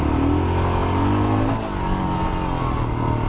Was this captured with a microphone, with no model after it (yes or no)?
yes